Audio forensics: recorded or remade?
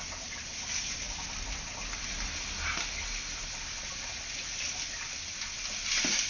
recorded